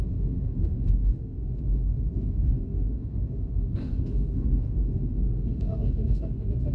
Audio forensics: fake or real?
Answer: fake